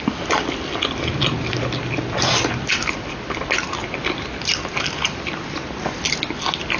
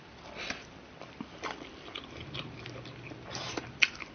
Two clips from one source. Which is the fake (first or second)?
second